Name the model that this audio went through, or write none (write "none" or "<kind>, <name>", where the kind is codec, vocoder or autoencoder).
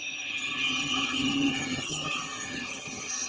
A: vocoder, HiFi-GAN